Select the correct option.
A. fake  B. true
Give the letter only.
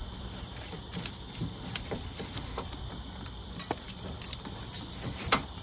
A